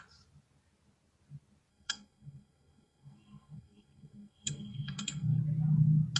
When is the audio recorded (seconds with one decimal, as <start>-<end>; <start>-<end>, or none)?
0.0-1.7; 5.4-6.2